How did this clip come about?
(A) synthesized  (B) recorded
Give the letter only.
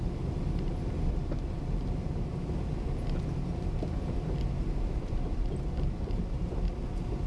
B